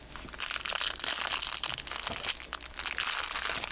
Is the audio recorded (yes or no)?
yes